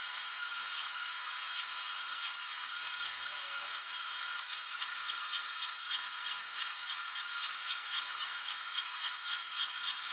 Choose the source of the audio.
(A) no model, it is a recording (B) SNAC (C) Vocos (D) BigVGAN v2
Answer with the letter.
B